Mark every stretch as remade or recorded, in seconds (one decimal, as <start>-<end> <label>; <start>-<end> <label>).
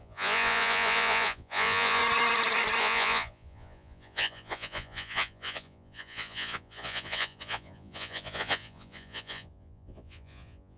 0.0-2.0 remade; 2.0-2.8 recorded; 2.8-10.8 remade